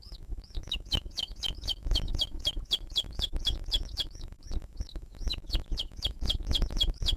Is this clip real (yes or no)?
no